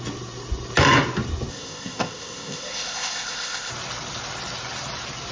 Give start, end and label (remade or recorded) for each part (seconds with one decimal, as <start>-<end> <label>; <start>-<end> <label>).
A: 0.0-1.5 recorded; 1.5-3.7 remade; 3.7-5.3 recorded